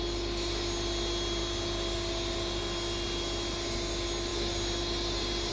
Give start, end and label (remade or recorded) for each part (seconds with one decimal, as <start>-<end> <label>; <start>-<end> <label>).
0.0-5.5 recorded